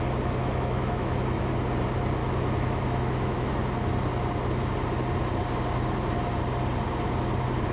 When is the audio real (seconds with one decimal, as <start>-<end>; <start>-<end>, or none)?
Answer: 0.0-0.4; 1.5-2.2; 3.5-7.7